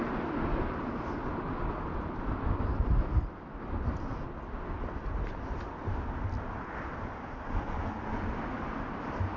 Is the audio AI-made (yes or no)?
no